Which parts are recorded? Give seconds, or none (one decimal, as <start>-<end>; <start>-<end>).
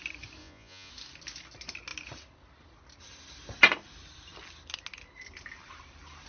0.0-0.4; 0.9-6.3